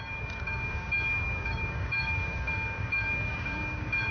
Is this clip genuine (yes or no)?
no